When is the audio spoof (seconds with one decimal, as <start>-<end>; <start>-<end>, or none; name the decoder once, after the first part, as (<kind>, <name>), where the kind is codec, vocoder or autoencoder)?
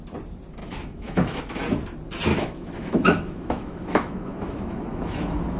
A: 0.6-1.6 (autoencoder, DAC-VAE); 2.3-5.6